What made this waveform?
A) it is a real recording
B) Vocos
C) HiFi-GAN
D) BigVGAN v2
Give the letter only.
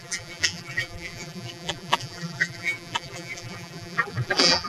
D